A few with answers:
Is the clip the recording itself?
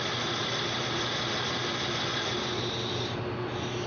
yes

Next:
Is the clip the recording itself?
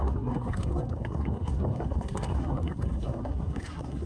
no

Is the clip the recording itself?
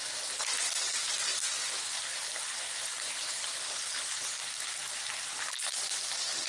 yes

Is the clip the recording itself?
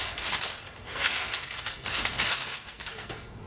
no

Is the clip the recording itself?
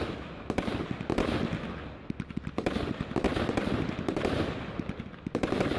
yes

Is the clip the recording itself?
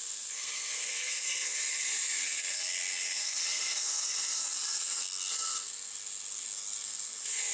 no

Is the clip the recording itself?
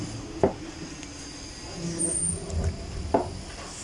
yes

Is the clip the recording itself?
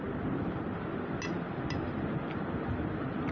yes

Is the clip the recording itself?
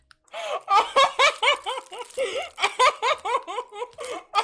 yes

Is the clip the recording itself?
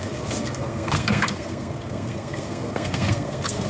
no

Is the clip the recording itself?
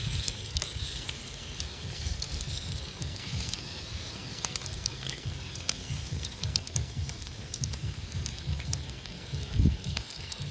no